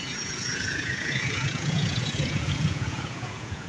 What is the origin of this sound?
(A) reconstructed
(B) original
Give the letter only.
A